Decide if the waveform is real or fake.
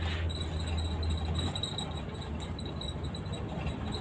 real